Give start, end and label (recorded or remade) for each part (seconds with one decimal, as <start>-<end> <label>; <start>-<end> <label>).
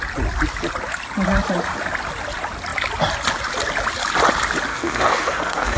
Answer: 0.0-4.7 recorded; 4.7-5.8 remade